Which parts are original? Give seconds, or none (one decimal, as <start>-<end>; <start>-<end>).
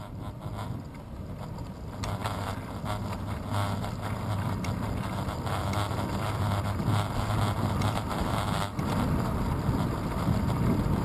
0.0-11.0